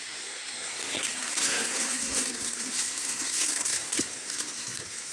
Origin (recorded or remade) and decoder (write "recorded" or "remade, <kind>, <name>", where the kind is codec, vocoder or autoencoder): remade, codec, SNAC